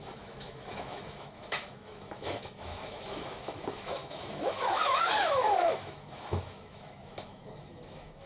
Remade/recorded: remade